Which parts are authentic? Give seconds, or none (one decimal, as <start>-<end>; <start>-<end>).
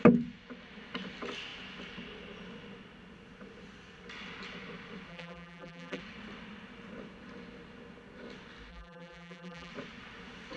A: 0.0-5.1; 6.0-8.7; 9.7-10.6